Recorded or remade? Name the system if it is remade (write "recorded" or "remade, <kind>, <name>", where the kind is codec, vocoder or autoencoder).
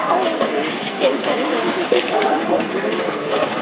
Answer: remade, codec, SNAC